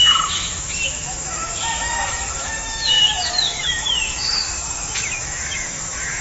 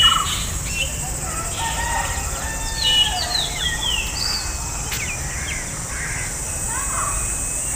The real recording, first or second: second